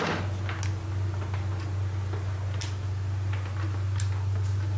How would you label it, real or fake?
real